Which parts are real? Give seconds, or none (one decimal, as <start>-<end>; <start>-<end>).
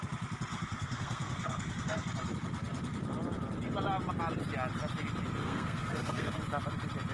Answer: 0.0-0.5; 2.1-5.4; 6.3-7.1